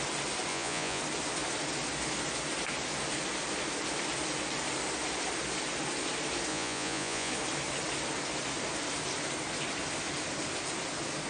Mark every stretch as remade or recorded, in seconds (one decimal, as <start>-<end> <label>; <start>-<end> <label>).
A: 0.0-0.5 recorded; 0.5-1.0 remade; 1.0-6.5 recorded; 6.5-7.3 remade; 7.3-11.3 recorded